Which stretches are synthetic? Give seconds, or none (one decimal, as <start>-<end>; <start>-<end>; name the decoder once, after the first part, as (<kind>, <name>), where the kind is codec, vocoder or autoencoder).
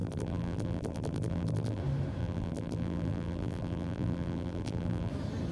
0.0-1.8 (vocoder, BigVGAN v2); 2.2-5.1